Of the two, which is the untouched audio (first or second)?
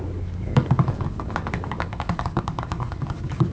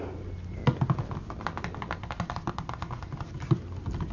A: second